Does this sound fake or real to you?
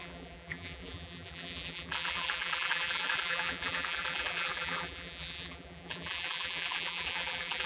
fake